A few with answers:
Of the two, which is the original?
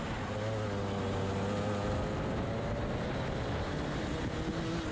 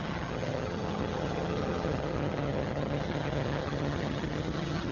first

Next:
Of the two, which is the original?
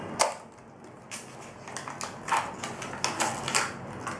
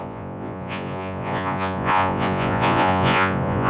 first